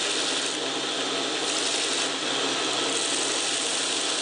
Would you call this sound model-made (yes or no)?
no